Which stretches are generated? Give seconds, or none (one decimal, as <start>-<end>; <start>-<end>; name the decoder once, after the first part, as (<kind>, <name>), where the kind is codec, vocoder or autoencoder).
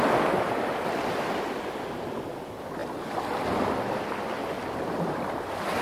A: none